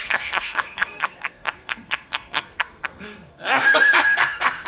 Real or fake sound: fake